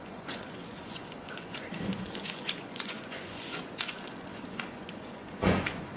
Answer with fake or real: fake